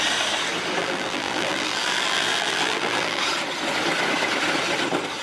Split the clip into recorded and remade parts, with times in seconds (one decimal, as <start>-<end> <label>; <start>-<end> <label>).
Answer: 0.0-0.8 recorded; 0.8-3.2 remade; 3.2-5.2 recorded